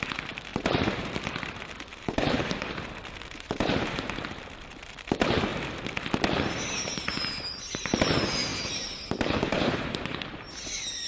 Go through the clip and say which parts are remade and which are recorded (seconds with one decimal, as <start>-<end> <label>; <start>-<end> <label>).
0.0-0.5 recorded; 0.5-1.1 remade; 1.1-1.9 recorded; 1.9-4.2 remade; 4.2-8.5 recorded; 8.5-9.8 remade; 9.8-11.1 recorded